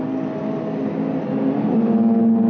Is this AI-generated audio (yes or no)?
no